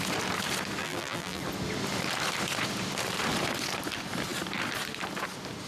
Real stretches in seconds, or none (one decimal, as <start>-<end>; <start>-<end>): 0.0-0.8; 1.4-5.7